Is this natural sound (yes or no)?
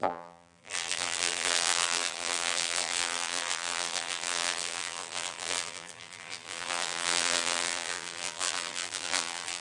no